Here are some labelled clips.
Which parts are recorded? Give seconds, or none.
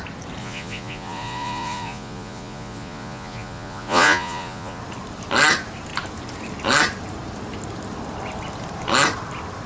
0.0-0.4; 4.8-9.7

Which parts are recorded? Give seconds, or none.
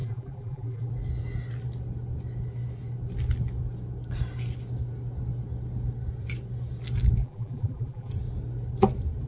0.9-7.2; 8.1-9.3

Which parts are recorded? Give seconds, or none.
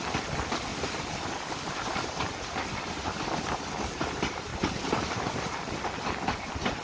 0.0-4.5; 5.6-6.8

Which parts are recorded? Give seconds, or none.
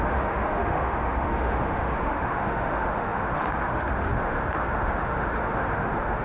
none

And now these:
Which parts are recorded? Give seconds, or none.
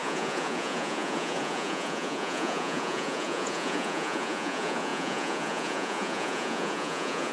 none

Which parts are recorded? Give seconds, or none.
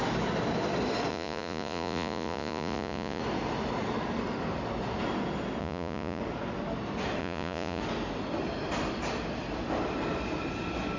0.0-1.1; 3.2-5.6; 6.2-7.2; 7.8-11.0